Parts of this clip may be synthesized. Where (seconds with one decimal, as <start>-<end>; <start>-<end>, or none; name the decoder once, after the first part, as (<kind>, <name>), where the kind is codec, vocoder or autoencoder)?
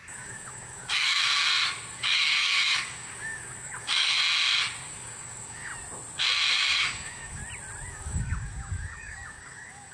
0.0-1.2 (codec, DAC); 1.9-4.2; 4.9-5.7; 6.5-7.4; 7.9-9.9